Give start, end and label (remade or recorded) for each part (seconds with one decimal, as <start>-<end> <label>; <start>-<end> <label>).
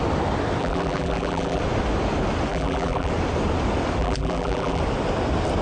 0.0-0.6 recorded; 0.6-1.6 remade; 1.6-2.5 recorded; 2.5-3.1 remade; 3.1-4.0 recorded; 4.0-4.8 remade; 4.8-5.6 recorded